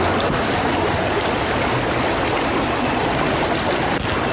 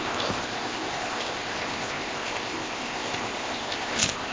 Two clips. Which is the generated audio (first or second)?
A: second